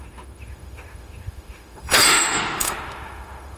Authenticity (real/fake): fake